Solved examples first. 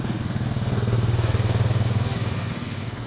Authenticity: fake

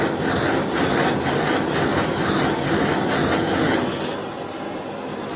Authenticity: real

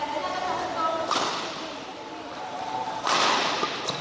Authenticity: real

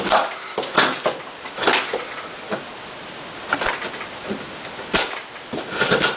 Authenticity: real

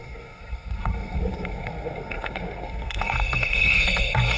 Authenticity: fake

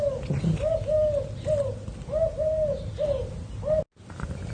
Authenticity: real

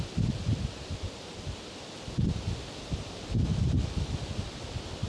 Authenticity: real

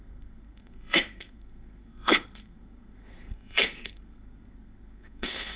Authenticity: fake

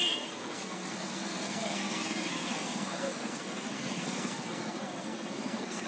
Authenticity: fake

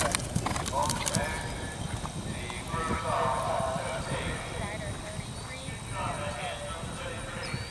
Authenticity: real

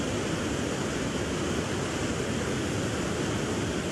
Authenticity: real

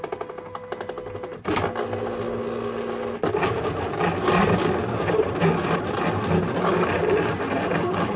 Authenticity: real